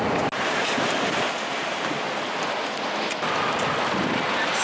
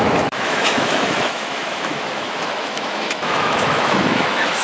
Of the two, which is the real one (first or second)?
first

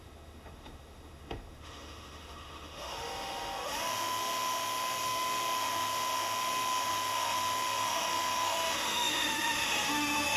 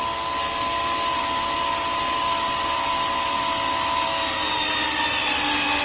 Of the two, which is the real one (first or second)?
second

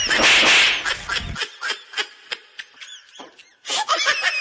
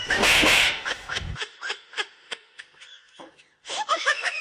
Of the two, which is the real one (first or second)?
first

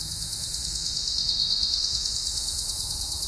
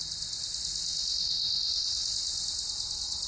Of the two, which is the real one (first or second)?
second